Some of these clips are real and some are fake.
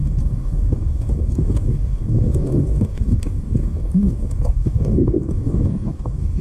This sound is fake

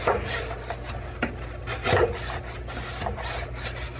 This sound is real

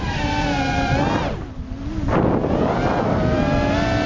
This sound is real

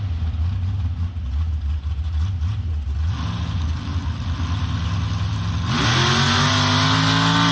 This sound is real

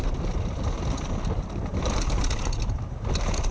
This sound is real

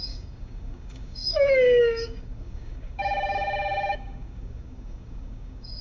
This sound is fake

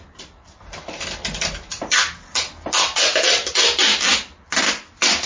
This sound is real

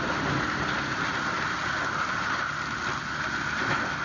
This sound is real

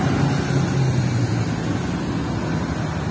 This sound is real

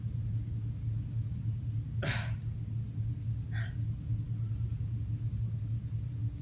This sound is real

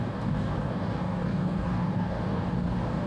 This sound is fake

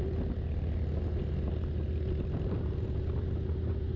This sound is real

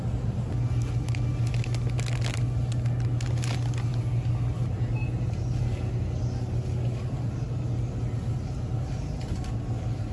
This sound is real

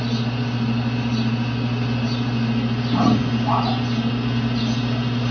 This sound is real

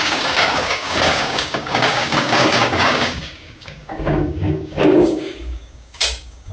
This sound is fake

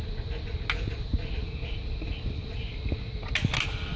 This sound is real